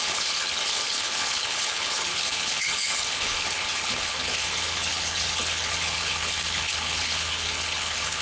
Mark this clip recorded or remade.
remade